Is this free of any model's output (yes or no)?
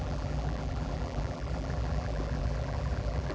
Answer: no